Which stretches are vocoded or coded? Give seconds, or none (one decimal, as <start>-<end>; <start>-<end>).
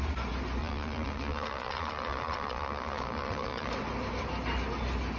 0.6-3.7